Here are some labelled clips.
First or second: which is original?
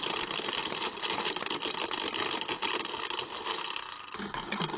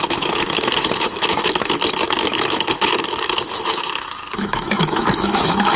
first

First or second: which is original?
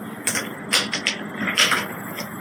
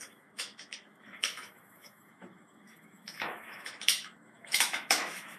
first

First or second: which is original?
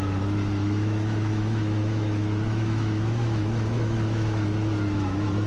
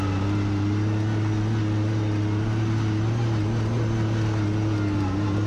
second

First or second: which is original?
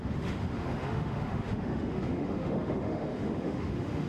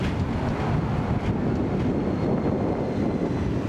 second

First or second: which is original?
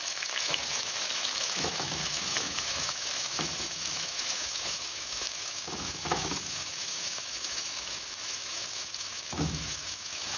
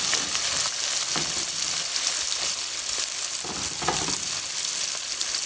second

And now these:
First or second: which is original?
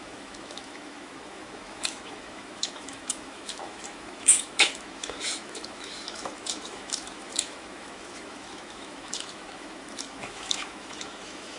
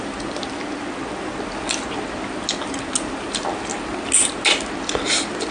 second